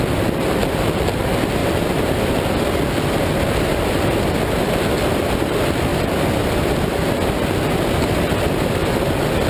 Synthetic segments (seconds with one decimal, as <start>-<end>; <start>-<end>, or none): 5.9-6.5